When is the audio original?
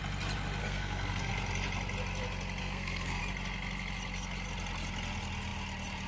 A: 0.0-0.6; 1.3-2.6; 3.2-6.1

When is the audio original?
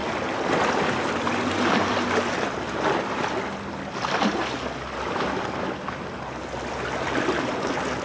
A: 0.0-8.0